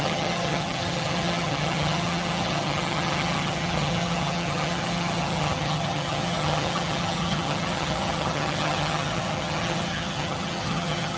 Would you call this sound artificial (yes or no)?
yes